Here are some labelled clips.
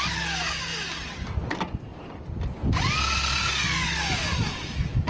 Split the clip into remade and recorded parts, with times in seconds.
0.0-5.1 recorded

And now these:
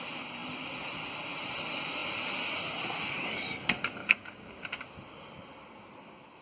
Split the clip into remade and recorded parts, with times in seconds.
0.0-4.0 recorded; 4.0-4.6 remade; 4.6-6.4 recorded

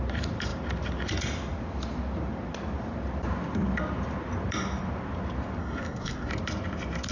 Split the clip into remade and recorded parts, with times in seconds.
0.0-5.6 recorded; 5.6-6.3 remade; 6.3-7.1 recorded

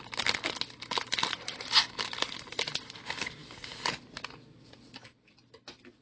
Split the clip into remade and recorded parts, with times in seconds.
0.0-6.0 recorded

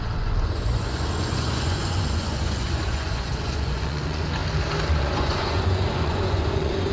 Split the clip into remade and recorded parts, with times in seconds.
0.0-4.4 remade; 4.4-5.0 recorded; 5.0-6.9 remade

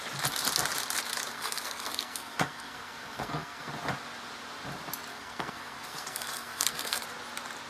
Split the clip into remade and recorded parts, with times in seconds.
0.0-1.3 recorded; 1.3-3.7 remade; 3.7-5.1 recorded; 5.1-7.0 remade; 7.0-7.7 recorded